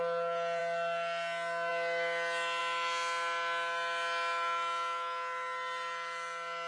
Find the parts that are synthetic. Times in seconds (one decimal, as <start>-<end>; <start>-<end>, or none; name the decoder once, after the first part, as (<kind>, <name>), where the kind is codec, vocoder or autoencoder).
none